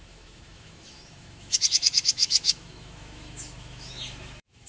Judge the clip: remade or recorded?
remade